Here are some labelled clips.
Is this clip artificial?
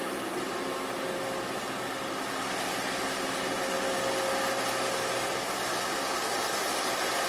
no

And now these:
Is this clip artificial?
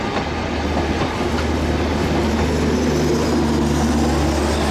no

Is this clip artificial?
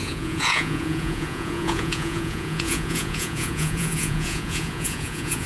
yes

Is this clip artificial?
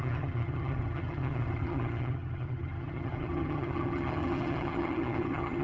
yes